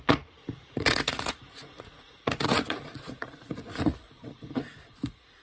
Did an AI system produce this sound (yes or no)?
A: yes